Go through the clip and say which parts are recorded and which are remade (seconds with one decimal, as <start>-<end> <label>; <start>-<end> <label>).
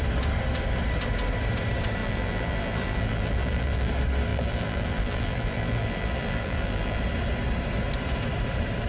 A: 0.0-2.0 recorded; 2.0-3.9 remade; 3.9-4.3 recorded; 4.3-7.0 remade; 7.0-8.9 recorded